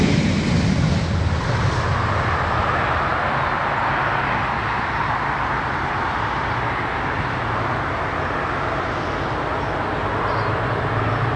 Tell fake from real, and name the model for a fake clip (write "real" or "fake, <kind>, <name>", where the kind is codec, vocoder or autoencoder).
real